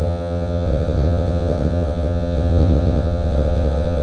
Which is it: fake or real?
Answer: fake